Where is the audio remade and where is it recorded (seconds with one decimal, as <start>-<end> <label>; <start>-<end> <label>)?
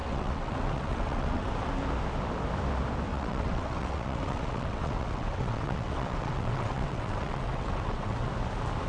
0.0-1.5 remade; 1.5-3.1 recorded; 3.1-8.3 remade; 8.3-8.9 recorded